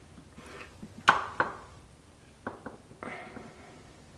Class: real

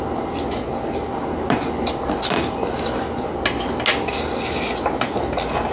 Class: real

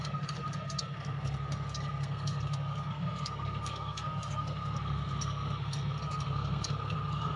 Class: fake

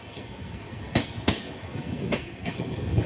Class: fake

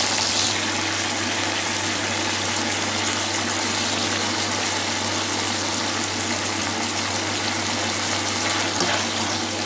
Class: real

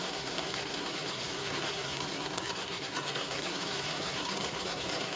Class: fake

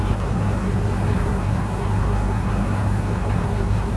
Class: fake